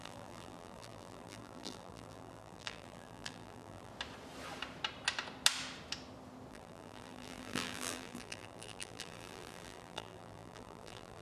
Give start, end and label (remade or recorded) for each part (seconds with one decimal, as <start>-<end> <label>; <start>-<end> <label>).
0.0-3.9 remade; 3.9-6.5 recorded; 6.5-11.2 remade